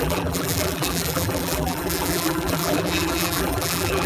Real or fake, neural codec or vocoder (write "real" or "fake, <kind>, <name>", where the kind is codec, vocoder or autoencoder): fake, vocoder, BigVGAN v2